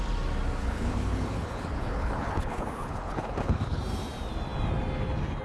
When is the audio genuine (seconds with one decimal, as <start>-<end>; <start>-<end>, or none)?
0.0-0.6; 3.8-5.4